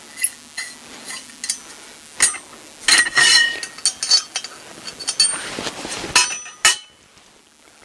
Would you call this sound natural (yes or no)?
yes